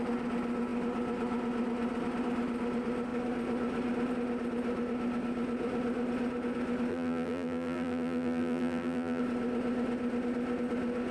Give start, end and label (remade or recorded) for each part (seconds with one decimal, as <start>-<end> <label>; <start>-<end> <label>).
0.0-6.9 recorded; 6.9-9.2 remade; 9.2-11.1 recorded